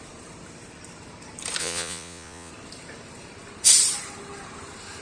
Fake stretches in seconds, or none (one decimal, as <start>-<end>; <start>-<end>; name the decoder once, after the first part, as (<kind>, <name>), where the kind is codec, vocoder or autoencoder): 1.6-2.5 (vocoder, Vocos)